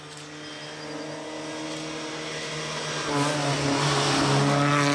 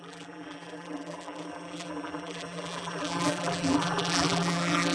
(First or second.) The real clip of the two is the first